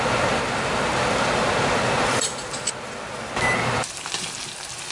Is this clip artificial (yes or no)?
no